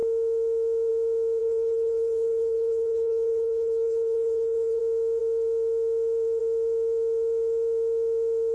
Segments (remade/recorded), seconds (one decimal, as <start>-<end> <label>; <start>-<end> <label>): 0.0-1.4 recorded; 1.4-4.8 remade; 4.8-8.5 recorded